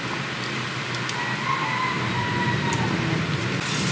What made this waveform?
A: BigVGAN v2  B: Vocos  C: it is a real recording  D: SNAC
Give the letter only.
C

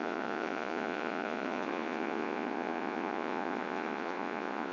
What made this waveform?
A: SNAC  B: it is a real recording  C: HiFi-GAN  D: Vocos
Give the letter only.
D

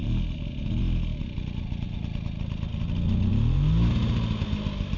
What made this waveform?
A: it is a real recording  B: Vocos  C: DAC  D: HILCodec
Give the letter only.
A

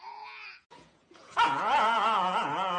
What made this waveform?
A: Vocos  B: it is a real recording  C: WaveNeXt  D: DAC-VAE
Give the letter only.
A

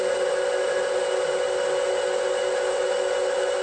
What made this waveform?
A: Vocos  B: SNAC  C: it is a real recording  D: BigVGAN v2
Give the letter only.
C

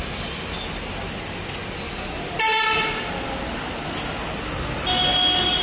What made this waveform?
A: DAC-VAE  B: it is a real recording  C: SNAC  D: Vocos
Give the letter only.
B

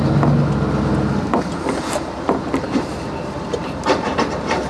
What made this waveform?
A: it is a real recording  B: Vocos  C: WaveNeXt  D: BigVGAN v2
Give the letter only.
A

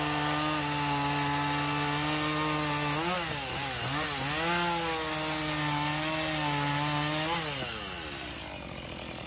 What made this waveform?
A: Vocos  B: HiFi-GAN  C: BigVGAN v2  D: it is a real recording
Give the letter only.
D